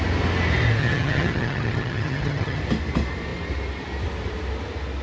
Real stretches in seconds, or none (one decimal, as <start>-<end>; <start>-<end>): 0.0-0.8; 2.6-5.0